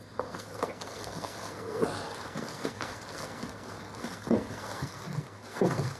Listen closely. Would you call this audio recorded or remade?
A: remade